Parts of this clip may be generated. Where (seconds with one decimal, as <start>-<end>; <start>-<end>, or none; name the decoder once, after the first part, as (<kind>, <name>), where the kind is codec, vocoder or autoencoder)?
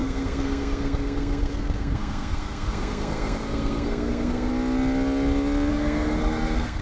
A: 0.0-4.5 (codec, SNAC); 5.7-6.8